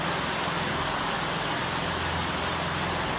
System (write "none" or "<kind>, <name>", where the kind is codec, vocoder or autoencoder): none